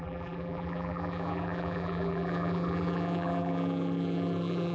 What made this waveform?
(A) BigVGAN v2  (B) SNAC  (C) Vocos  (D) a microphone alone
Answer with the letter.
A